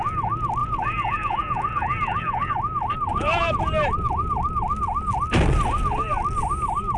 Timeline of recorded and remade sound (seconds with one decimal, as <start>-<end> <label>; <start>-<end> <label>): 0.0-0.6 recorded; 0.6-2.5 remade; 2.5-3.1 recorded; 3.1-3.7 remade; 3.7-7.0 recorded